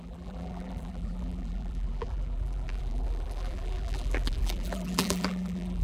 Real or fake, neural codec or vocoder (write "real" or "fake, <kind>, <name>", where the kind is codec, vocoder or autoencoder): fake, vocoder, BigVGAN v2